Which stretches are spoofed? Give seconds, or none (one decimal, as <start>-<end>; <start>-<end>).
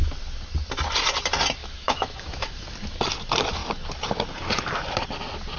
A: 1.6-2.5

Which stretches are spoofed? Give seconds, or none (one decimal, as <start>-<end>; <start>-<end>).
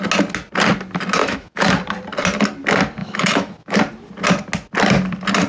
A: 1.2-1.7; 3.0-3.8